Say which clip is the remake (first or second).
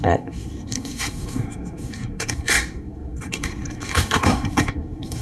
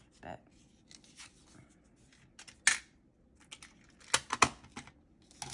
first